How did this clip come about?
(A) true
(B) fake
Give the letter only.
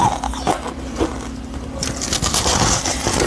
A